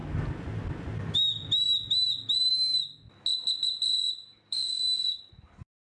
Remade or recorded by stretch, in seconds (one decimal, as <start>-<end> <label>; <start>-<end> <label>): 0.0-4.2 recorded; 4.2-5.2 remade; 5.2-5.8 recorded